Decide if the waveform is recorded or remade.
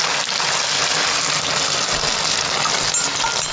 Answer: recorded